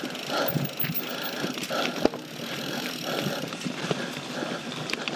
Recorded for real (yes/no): yes